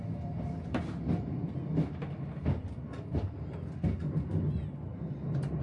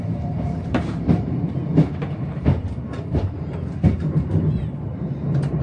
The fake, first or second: second